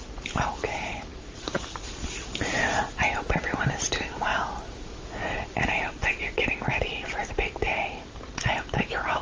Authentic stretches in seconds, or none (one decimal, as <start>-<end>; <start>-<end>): 0.0-9.2